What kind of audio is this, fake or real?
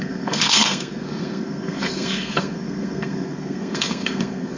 fake